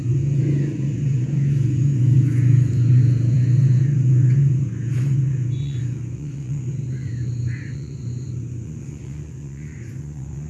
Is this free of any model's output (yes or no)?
no